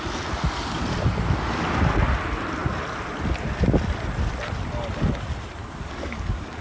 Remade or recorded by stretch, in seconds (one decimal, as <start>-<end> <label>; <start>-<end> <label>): 0.0-5.6 recorded; 5.6-6.6 remade